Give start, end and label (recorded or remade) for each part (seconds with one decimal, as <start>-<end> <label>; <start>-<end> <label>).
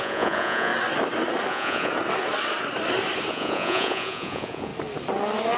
0.0-0.7 remade; 0.7-1.5 recorded; 1.5-1.9 remade; 1.9-3.3 recorded; 3.3-4.7 remade; 4.7-5.6 recorded